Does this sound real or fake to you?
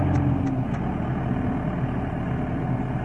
real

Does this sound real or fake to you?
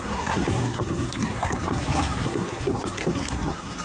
fake